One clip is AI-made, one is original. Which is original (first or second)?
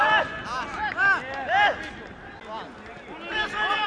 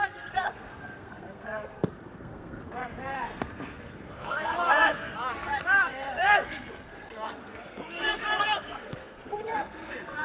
first